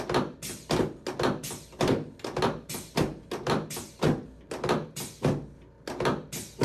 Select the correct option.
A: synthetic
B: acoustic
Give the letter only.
B